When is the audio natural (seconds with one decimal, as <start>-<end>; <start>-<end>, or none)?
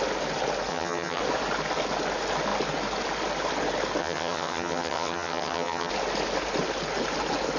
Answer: 0.0-0.7; 1.2-4.0; 5.9-7.6